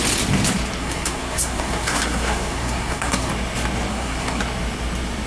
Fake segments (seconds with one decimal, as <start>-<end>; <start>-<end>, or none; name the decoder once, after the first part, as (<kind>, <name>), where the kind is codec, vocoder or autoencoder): 0.8-3.3 (codec, SNAC); 3.9-4.4